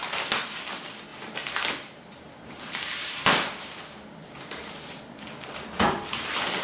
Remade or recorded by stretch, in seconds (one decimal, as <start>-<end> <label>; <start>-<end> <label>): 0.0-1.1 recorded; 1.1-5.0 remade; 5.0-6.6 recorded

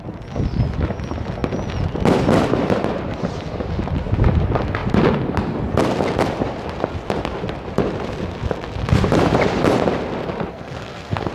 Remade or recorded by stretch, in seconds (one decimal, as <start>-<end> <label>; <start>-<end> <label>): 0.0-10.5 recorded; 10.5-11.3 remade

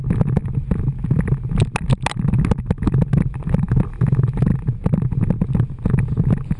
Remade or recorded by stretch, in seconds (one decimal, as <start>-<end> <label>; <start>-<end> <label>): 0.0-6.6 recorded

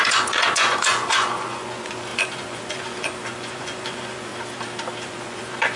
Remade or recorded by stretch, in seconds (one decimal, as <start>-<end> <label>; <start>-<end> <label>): 0.0-4.3 remade; 4.3-5.0 recorded; 5.0-5.8 remade

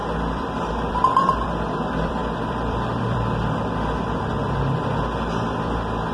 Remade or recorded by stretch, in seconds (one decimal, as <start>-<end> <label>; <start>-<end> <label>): 0.0-6.1 remade

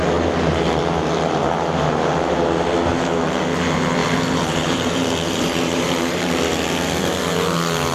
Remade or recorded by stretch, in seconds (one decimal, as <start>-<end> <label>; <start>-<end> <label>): 0.0-4.0 recorded; 4.0-6.3 remade; 6.3-7.9 recorded